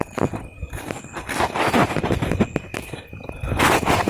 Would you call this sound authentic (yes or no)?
yes